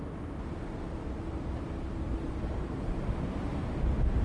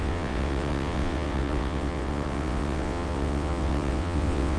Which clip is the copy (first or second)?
second